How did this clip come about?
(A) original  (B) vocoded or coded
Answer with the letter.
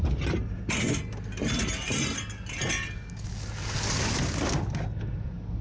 A